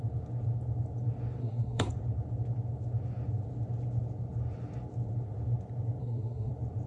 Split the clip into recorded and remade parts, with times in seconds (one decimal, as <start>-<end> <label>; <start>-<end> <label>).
0.0-1.4 recorded; 1.4-1.9 remade; 1.9-6.0 recorded; 6.0-6.5 remade; 6.5-6.9 recorded